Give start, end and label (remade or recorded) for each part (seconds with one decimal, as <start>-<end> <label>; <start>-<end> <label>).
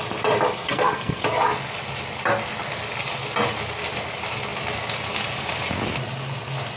0.0-0.7 recorded; 0.7-1.2 remade; 1.2-6.8 recorded